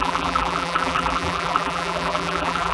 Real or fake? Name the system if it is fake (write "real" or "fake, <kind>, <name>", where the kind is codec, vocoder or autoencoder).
fake, vocoder, BigVGAN v2